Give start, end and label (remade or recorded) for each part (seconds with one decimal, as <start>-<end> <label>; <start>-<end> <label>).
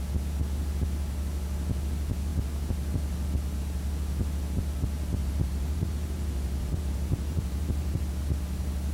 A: 0.0-5.2 recorded; 5.2-8.0 remade; 8.0-8.9 recorded